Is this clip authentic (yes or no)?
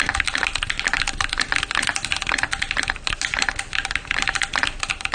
yes